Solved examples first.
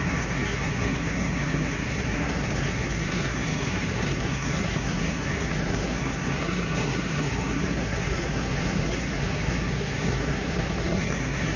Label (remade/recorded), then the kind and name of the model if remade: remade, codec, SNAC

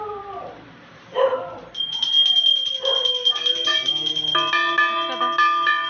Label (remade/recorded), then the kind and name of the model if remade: recorded